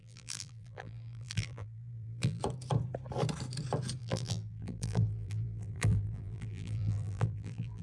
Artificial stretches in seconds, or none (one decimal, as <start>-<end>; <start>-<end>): 0.0-2.4; 4.0-7.8